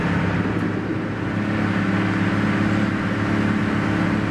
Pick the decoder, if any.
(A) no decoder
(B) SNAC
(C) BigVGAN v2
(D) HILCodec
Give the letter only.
A